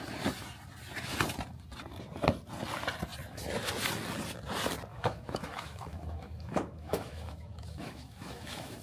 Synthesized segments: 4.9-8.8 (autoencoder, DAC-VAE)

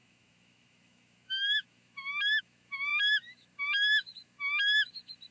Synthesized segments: 0.0-5.3 (autoencoder, DAC-VAE)